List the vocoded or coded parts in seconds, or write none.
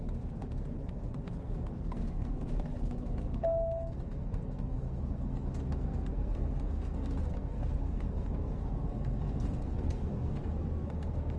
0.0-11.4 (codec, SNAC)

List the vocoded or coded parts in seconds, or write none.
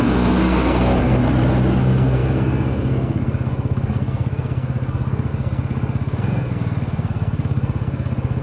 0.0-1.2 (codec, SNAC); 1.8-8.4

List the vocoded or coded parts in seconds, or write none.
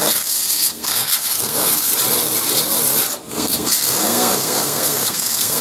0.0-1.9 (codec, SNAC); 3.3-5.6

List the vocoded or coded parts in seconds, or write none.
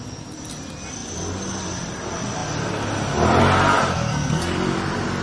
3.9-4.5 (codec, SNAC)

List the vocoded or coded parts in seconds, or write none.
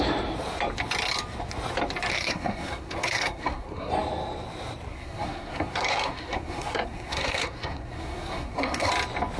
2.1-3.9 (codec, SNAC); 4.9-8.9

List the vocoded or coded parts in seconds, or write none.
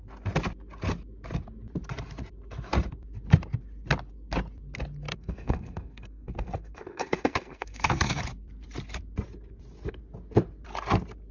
5.1-8.2 (codec, SNAC)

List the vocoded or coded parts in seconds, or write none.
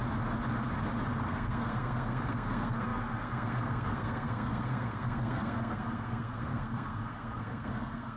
1.3-8.2 (codec, SNAC)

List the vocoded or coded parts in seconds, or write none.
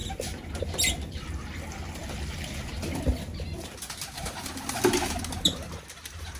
none